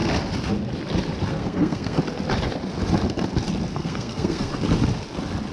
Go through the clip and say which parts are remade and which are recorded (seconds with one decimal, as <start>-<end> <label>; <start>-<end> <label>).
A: 0.0-1.3 recorded; 1.3-2.0 remade; 2.0-3.7 recorded; 3.7-4.5 remade; 4.5-5.5 recorded